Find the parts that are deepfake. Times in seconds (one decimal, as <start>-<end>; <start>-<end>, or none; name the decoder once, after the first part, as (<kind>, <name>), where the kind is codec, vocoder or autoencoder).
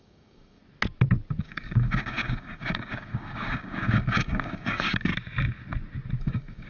0.0-0.6 (codec, DAC); 1.4-5.1; 6.2-6.7